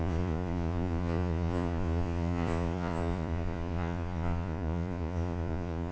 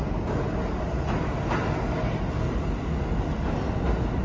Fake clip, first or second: first